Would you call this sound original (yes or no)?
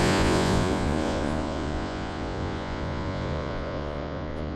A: no